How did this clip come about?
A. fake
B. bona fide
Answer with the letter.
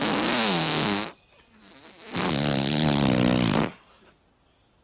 B